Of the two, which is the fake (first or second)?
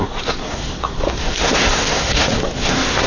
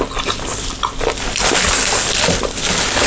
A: first